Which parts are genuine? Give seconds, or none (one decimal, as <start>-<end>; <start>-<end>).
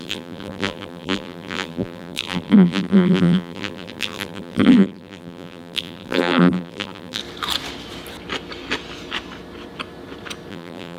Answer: 7.2-10.5